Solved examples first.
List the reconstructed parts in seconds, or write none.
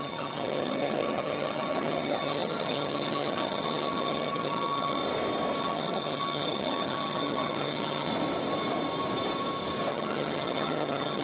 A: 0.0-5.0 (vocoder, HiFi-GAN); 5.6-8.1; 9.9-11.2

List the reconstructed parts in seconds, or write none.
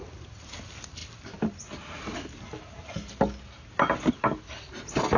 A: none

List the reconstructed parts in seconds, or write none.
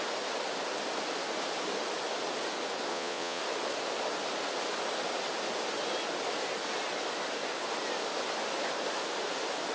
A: 2.9-3.4 (vocoder, Vocos)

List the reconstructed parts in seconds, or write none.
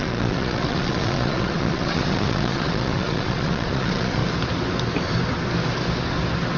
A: 0.0-4.2 (vocoder, Vocos)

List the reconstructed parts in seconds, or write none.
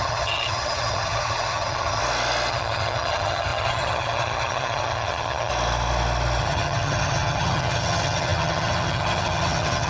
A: 0.0-2.0 (vocoder, HiFi-GAN); 2.5-5.5; 6.4-9.9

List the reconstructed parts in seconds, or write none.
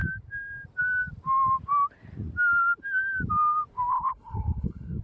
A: 3.9-5.0 (codec, HILCodec)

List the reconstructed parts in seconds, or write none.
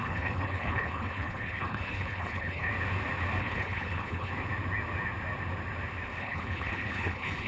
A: 0.0-2.7 (codec, HILCodec); 3.4-4.3; 6.2-7.5